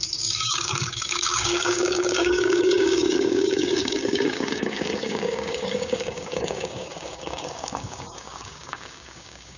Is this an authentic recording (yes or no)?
no